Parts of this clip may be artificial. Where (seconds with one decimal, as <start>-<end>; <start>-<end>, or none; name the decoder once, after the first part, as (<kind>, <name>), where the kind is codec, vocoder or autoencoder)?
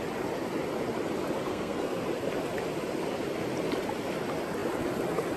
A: 1.5-2.0 (codec, SNAC)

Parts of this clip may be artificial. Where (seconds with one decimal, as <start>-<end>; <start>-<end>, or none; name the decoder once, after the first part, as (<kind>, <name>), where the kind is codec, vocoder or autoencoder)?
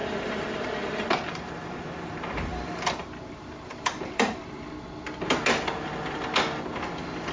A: 0.0-4.4 (vocoder, BigVGAN v2)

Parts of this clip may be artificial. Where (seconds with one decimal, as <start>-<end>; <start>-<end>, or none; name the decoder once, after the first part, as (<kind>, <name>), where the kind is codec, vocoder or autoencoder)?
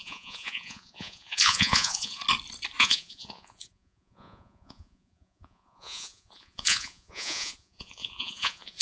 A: 0.0-2.2 (vocoder, Vocos); 2.8-8.8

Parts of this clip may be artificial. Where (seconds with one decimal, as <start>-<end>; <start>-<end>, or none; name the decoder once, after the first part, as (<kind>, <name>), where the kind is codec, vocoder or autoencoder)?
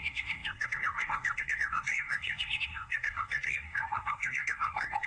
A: 0.0-5.1 (codec, SNAC)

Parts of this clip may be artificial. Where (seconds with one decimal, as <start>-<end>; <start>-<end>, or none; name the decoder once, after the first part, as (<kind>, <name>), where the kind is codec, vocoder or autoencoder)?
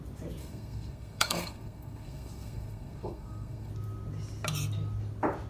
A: 0.4-3.7 (codec, SNAC)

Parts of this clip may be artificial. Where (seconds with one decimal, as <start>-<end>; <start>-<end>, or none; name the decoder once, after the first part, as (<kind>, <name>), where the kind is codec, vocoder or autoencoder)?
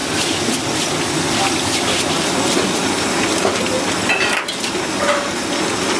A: none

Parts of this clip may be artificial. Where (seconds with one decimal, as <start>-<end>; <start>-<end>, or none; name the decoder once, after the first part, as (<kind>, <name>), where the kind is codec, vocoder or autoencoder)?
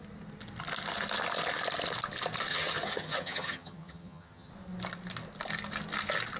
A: 2.5-4.5 (vocoder, HiFi-GAN)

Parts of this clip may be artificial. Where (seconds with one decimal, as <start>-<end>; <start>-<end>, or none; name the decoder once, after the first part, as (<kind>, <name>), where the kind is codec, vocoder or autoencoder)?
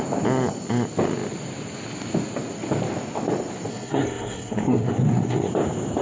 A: 3.7-5.5 (codec, SNAC)